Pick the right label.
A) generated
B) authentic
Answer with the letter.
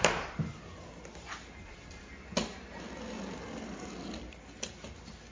B